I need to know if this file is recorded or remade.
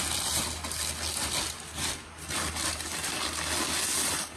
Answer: recorded